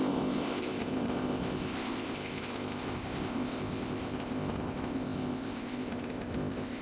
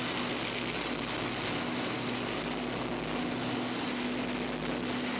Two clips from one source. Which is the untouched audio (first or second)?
second